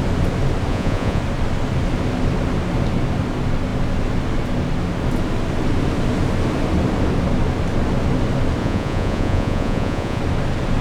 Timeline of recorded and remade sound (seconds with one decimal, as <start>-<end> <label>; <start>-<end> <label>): 0.0-0.7 recorded; 0.7-1.2 remade; 1.2-8.6 recorded; 8.6-10.2 remade; 10.2-10.8 recorded